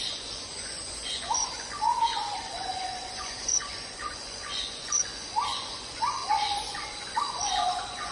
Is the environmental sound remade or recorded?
remade